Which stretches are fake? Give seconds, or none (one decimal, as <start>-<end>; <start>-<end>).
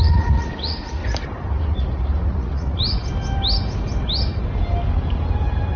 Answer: 0.0-1.0; 1.5-2.8